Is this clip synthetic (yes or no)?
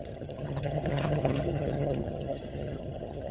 yes